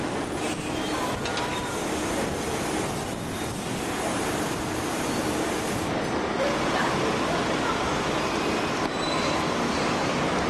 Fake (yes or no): no